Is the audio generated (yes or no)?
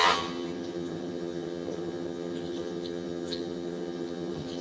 yes